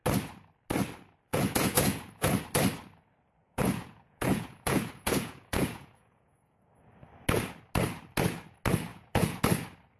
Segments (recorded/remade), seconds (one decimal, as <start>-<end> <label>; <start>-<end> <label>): 0.0-1.3 recorded; 1.3-2.4 remade; 2.4-3.4 recorded; 3.4-6.7 remade; 6.7-8.9 recorded; 8.9-9.4 remade; 9.4-10.0 recorded